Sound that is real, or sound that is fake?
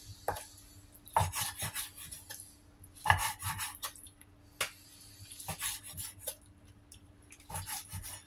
real